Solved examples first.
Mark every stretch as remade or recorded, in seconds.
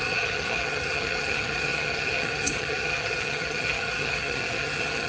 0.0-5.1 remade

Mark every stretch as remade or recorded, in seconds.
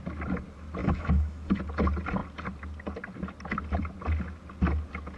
0.0-0.8 recorded; 0.8-1.6 remade; 1.6-5.2 recorded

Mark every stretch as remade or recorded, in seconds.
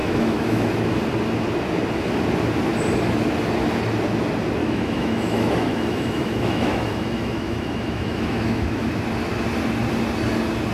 0.0-0.7 remade; 0.7-4.6 recorded; 4.6-8.9 remade; 8.9-10.7 recorded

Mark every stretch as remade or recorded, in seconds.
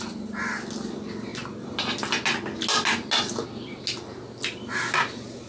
0.0-5.5 recorded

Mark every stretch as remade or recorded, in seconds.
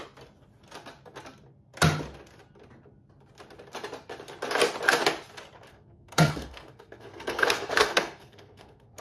0.0-5.7 recorded; 5.7-9.0 remade